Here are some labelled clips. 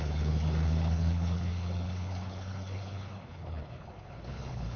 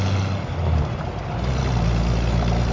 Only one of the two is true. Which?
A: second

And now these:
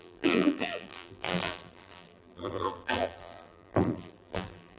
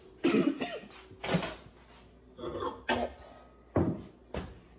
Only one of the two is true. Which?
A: second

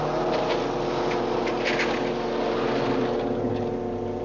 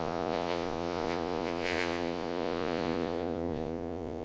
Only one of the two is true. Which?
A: first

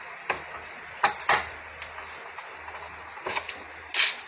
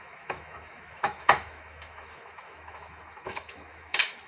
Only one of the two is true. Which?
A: first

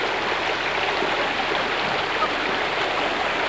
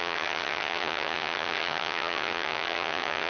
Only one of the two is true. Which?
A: first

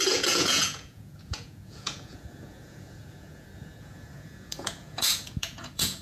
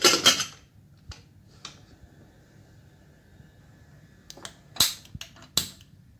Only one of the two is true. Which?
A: second